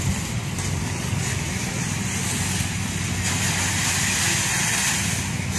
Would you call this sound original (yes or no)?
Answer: yes